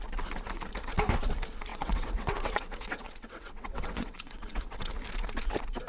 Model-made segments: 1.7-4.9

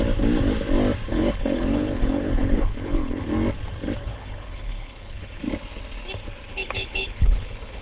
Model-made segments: 1.1-3.2; 4.0-5.4; 6.5-7.8

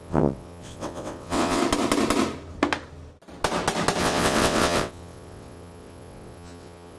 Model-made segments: 0.0-1.6; 4.0-7.0

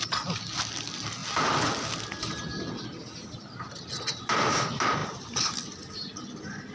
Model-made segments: none

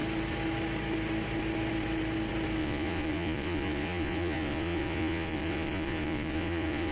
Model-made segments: 2.6-6.9

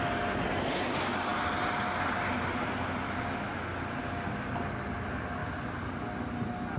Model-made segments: none

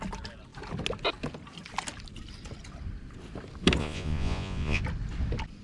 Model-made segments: 3.8-4.8